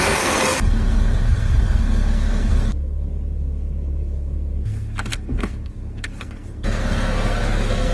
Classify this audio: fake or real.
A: fake